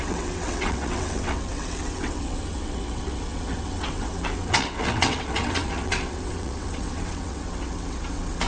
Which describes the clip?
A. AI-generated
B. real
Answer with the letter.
A